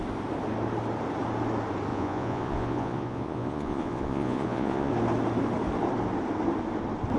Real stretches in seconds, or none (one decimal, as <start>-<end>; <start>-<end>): 0.0-1.9; 4.9-7.2